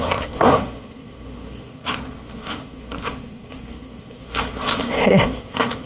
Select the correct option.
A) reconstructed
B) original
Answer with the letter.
A